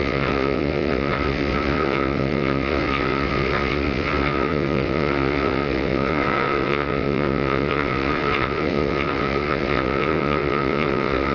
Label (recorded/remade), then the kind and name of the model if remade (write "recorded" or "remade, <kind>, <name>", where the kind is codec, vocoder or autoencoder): remade, vocoder, WaveNeXt